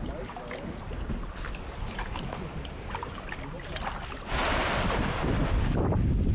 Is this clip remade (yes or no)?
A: no